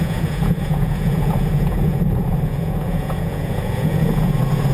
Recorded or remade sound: remade